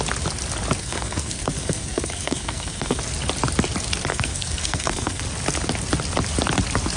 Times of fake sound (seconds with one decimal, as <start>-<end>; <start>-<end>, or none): 0.8-3.0; 4.1-5.2